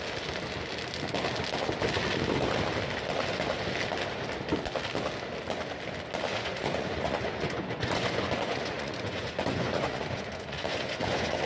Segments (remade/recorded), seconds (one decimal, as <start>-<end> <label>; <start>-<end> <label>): 0.0-6.3 recorded; 6.3-11.5 remade

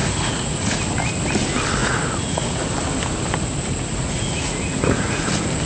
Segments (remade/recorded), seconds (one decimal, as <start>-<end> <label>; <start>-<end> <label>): 0.0-0.8 remade; 0.8-1.8 recorded; 1.8-2.7 remade; 2.7-3.9 recorded; 3.9-5.3 remade; 5.3-5.7 recorded

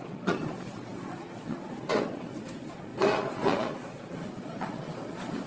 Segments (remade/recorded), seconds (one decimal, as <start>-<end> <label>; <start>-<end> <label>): 0.0-5.5 remade

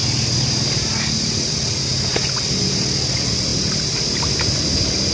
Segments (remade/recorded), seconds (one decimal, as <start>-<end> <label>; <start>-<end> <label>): 0.0-5.1 recorded

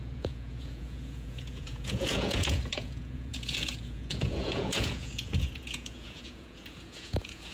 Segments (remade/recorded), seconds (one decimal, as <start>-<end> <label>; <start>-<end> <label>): 0.0-7.5 remade